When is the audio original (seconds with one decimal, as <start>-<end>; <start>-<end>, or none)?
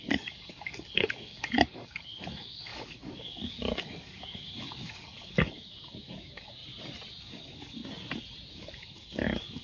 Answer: 6.6-7.2; 7.8-8.5